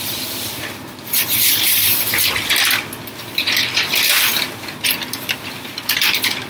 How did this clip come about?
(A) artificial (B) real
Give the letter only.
A